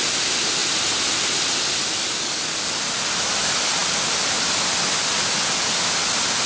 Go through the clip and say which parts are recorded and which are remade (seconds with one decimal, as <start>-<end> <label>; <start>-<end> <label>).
0.0-2.0 recorded; 2.0-2.8 remade; 2.8-6.5 recorded